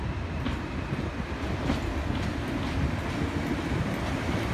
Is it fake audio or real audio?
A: real